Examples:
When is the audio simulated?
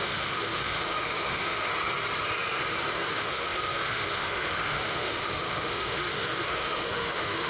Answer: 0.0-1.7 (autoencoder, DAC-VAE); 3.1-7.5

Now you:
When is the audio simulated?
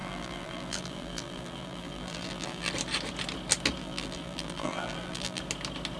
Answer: 0.0-2.7 (vocoder, BigVGAN v2); 3.8-5.4